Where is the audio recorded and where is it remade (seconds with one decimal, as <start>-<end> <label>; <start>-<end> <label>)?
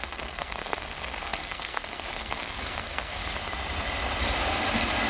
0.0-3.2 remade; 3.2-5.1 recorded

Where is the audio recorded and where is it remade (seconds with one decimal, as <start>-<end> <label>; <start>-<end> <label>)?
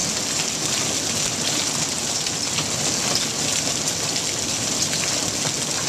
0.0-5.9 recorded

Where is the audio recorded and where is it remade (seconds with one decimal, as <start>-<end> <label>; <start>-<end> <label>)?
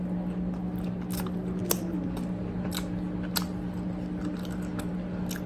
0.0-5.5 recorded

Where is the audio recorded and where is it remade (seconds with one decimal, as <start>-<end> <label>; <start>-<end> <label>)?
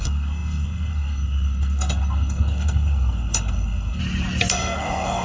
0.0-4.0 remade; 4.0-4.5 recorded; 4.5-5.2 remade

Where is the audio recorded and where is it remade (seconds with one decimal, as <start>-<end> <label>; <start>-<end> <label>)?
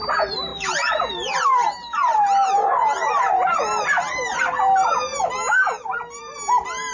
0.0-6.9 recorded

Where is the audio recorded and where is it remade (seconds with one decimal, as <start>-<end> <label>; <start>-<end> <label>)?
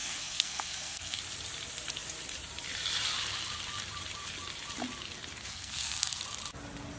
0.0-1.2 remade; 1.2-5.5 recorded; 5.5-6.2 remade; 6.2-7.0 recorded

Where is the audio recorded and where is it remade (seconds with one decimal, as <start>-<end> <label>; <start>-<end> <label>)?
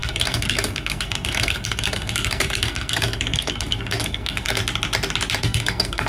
0.0-4.6 remade; 4.6-5.4 recorded; 5.4-6.1 remade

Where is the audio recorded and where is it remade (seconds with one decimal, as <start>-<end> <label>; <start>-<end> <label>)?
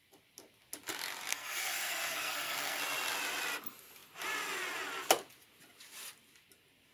0.0-1.3 recorded; 1.3-2.8 remade; 2.8-6.9 recorded